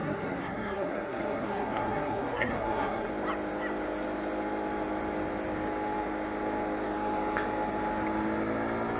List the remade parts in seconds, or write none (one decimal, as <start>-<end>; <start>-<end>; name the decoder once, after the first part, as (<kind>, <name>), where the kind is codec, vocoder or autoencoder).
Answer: 0.0-3.1 (codec, SNAC)